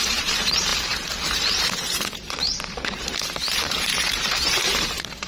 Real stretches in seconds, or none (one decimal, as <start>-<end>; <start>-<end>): none